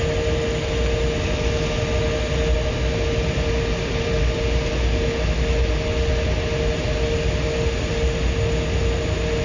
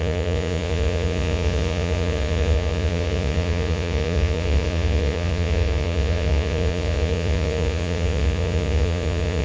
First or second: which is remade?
second